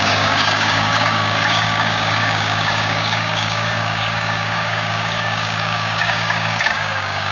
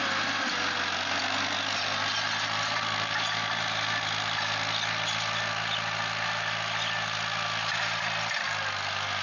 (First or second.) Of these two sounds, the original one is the second